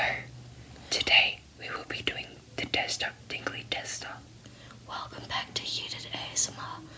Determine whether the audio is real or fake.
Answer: real